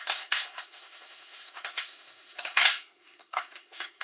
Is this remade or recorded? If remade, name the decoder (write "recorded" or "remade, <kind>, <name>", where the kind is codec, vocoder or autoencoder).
remade, codec, SNAC